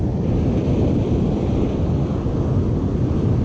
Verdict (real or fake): real